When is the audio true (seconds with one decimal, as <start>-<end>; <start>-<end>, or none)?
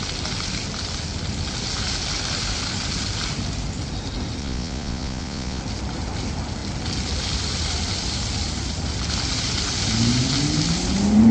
0.0-4.4; 5.6-11.3